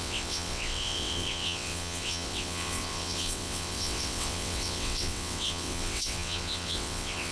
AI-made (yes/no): yes